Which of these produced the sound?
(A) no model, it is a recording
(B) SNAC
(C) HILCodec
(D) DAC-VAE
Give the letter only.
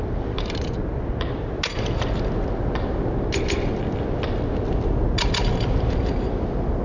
A